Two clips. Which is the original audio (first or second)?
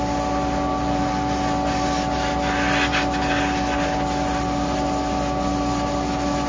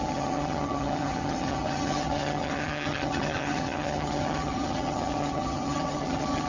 first